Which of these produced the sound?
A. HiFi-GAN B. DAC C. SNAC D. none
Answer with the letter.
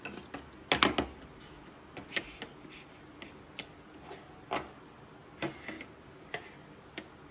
D